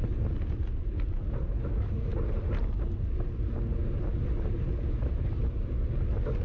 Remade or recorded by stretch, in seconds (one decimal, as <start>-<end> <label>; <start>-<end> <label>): 0.0-6.4 recorded

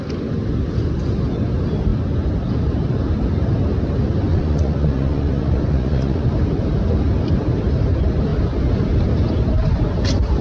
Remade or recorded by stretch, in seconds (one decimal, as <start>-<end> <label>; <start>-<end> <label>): 0.0-4.3 recorded; 4.3-6.3 remade; 6.3-10.4 recorded

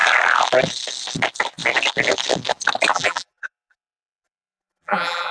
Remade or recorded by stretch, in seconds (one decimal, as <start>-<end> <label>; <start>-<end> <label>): 0.0-2.9 recorded; 2.9-5.3 remade

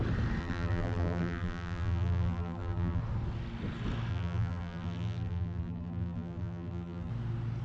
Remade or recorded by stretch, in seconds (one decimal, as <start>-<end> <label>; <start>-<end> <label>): 0.0-0.4 recorded; 0.4-3.0 remade; 3.0-4.1 recorded; 4.1-7.1 remade; 7.1-7.6 recorded

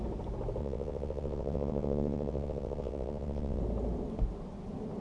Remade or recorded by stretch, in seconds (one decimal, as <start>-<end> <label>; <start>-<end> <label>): 0.0-0.6 recorded; 0.6-3.6 remade; 3.6-5.0 recorded

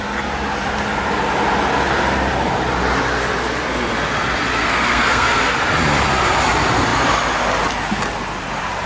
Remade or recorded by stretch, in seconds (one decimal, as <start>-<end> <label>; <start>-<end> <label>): 0.0-4.5 recorded; 4.5-5.5 remade; 5.5-8.9 recorded